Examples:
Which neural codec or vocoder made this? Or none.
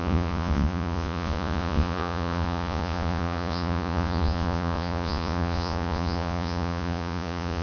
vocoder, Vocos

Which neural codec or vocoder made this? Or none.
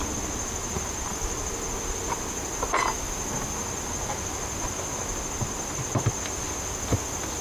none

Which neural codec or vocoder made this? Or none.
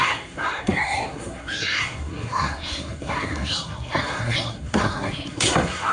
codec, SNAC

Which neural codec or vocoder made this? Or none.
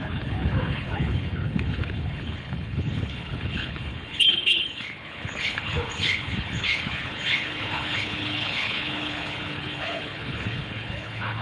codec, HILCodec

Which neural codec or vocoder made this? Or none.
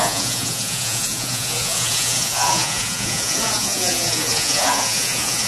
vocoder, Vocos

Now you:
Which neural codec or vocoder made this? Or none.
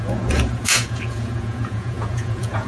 vocoder, Vocos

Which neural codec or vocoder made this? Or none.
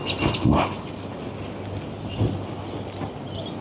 none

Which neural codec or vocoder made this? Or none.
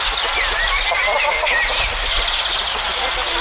none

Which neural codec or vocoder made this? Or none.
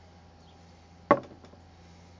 none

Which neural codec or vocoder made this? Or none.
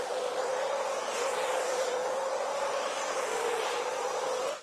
none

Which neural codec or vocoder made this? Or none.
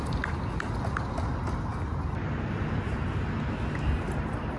none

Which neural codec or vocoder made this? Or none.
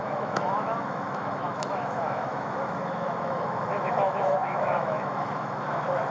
autoencoder, DAC-VAE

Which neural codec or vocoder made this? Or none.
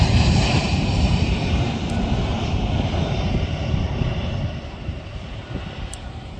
vocoder, BigVGAN v2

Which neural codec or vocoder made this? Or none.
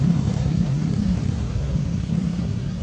codec, SNAC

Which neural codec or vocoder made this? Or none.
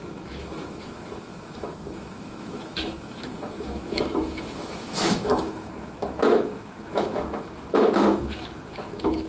autoencoder, DAC-VAE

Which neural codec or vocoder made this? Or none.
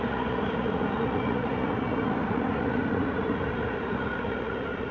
vocoder, Vocos